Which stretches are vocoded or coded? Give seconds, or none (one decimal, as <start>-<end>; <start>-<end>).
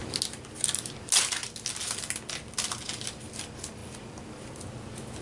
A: none